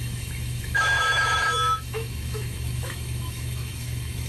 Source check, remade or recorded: remade